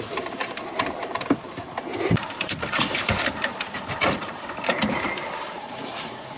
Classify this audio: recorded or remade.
remade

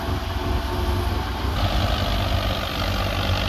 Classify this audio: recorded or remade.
recorded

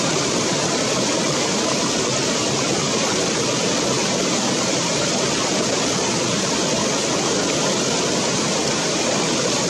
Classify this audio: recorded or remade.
recorded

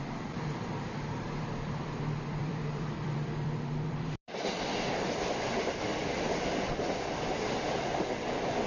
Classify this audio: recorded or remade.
remade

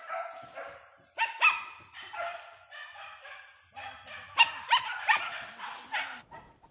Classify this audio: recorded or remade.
recorded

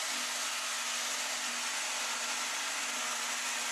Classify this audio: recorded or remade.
recorded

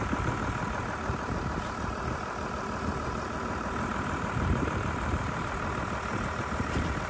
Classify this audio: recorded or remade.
recorded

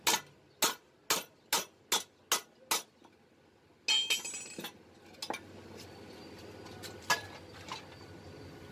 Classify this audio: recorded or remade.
recorded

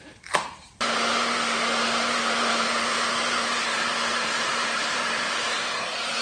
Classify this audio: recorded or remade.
remade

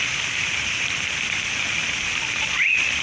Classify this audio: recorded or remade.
recorded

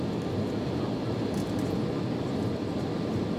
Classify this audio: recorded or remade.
recorded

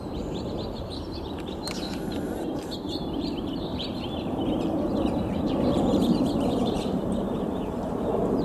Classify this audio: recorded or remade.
remade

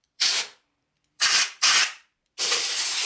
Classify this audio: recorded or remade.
remade